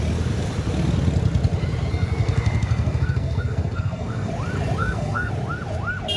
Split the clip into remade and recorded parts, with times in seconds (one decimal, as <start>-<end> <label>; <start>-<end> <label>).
0.0-1.9 recorded; 1.9-4.3 remade; 4.3-4.8 recorded; 4.8-5.3 remade; 5.3-6.2 recorded